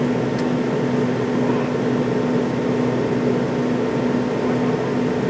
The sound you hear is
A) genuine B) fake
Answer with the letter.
A